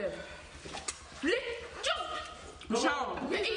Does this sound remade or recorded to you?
recorded